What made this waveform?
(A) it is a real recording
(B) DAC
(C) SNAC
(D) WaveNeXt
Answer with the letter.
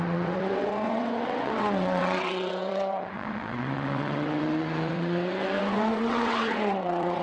D